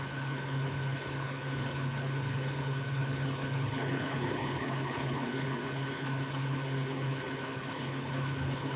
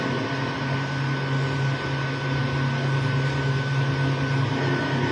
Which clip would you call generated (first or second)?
first